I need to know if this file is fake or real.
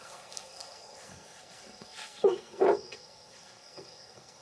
fake